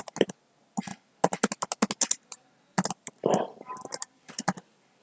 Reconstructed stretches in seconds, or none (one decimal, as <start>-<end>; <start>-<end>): none